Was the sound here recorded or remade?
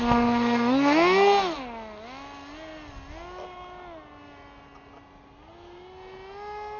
recorded